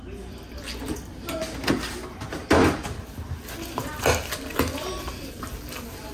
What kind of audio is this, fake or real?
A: real